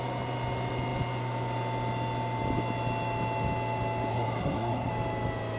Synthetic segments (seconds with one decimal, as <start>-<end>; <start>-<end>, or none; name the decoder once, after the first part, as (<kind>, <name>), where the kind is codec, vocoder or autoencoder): 4.1-4.9 (codec, SNAC)